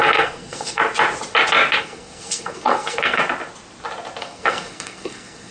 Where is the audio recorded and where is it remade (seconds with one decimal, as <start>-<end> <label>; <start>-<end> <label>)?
0.0-0.8 remade; 0.8-1.8 recorded; 1.8-3.2 remade; 3.2-4.2 recorded; 4.2-5.5 remade